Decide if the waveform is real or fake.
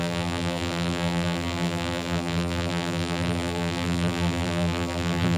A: fake